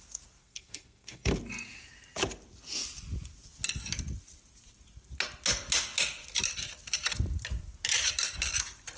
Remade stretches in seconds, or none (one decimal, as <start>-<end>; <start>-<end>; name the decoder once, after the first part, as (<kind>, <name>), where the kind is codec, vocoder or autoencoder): 0.4-1.3 (codec, SNAC)